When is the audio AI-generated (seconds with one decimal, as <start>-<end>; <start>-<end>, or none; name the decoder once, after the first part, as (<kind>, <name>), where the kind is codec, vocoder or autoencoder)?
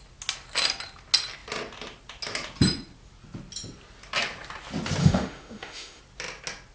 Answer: 5.0-6.0 (autoencoder, DAC-VAE)